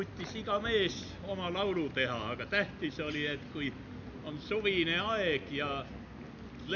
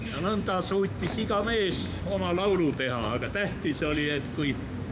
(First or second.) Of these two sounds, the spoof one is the second